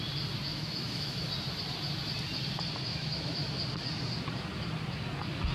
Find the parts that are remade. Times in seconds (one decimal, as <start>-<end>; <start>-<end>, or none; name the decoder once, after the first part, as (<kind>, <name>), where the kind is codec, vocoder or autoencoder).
0.5-1.3 (autoencoder, DAC-VAE); 2.9-3.5